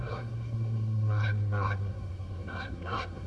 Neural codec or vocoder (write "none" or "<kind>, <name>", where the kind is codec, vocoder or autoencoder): codec, SNAC